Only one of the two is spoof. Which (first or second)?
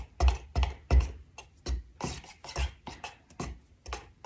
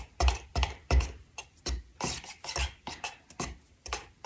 second